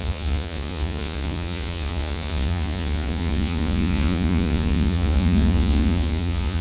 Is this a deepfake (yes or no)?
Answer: yes